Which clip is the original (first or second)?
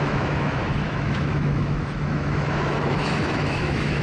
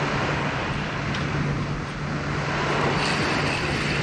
second